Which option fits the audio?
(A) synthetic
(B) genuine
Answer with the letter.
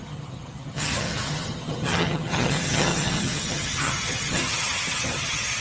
A